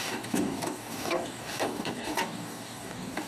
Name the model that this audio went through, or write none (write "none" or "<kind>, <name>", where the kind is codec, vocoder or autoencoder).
codec, DAC